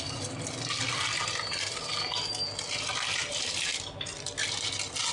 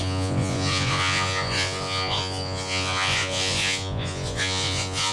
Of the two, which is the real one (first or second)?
first